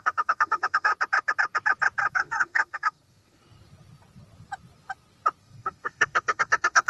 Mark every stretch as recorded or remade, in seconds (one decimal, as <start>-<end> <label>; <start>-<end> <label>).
0.0-0.9 remade; 0.9-2.1 recorded; 2.1-3.4 remade; 3.4-5.4 recorded; 5.4-6.9 remade